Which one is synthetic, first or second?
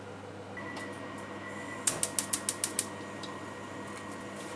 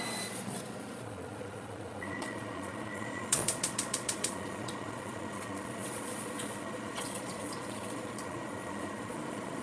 second